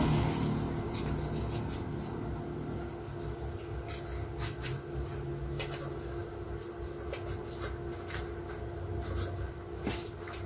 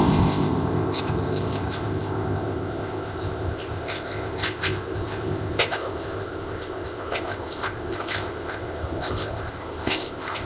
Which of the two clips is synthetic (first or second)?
second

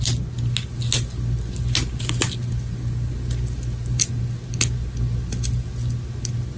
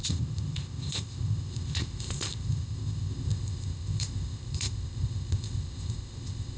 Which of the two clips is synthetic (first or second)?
second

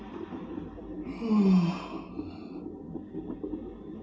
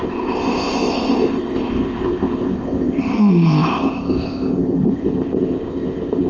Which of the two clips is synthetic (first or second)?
second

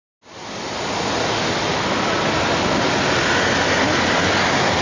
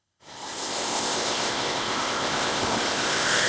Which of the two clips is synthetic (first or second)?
second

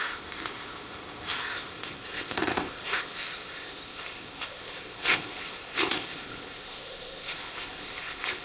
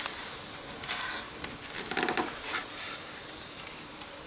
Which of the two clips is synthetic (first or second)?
first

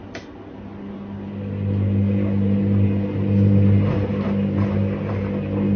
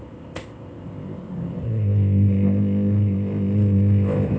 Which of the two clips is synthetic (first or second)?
second